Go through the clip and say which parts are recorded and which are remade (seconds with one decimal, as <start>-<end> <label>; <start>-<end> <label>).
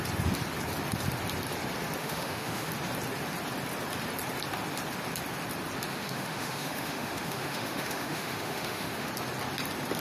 0.0-2.0 recorded; 2.0-2.7 remade; 2.7-5.9 recorded; 5.9-9.1 remade; 9.1-10.0 recorded